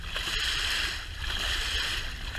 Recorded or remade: recorded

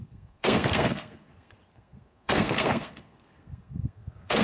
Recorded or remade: remade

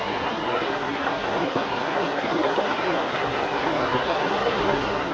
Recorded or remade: remade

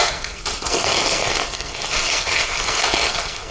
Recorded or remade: remade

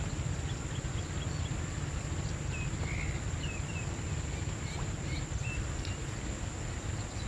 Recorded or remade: recorded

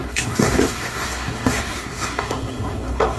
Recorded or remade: remade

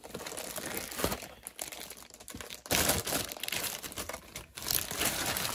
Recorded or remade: recorded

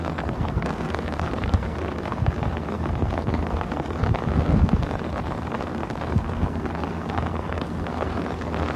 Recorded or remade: remade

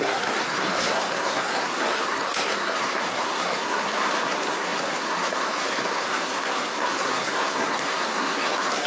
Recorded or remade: remade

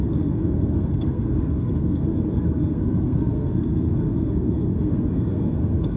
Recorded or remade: remade